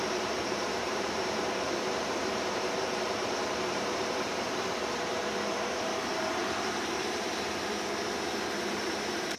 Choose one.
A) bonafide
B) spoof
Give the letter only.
B